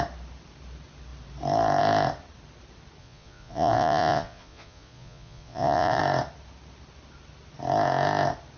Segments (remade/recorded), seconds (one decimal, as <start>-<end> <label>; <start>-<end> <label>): 0.0-3.0 recorded; 3.0-6.0 remade; 6.0-8.6 recorded